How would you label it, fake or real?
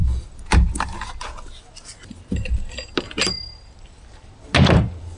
real